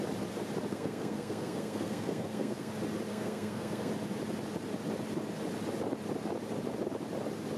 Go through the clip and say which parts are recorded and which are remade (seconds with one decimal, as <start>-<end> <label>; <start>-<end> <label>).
0.0-0.7 recorded; 0.7-2.7 remade; 2.7-3.1 recorded; 3.1-3.9 remade; 3.9-7.6 recorded